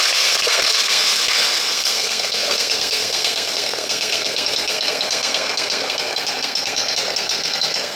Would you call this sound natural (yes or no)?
no